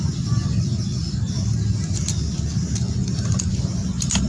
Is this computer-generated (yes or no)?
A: no